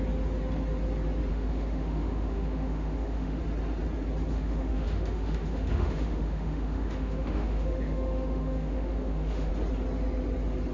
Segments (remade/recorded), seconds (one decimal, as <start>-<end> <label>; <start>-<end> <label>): 0.0-1.3 recorded; 1.3-3.4 remade; 3.4-4.3 recorded; 4.3-9.5 remade; 9.5-10.7 recorded